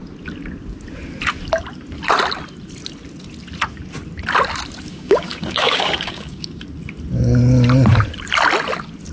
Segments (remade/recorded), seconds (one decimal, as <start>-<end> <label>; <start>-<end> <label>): 0.0-4.9 recorded; 4.9-6.6 remade; 6.6-9.1 recorded

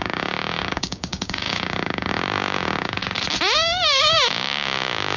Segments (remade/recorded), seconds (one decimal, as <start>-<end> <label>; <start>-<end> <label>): 0.0-3.0 remade; 3.0-4.0 recorded; 4.0-5.2 remade